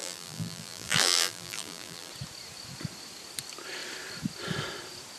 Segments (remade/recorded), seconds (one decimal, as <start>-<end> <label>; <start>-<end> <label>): 0.0-2.1 remade; 2.1-5.2 recorded